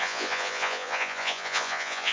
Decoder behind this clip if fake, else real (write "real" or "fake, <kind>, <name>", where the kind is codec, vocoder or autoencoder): fake, vocoder, Vocos